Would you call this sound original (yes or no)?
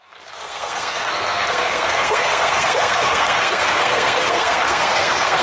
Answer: no